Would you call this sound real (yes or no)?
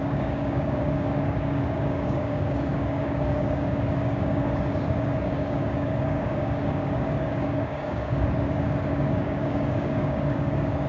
no